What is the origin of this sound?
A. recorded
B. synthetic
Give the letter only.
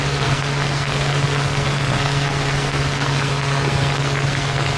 B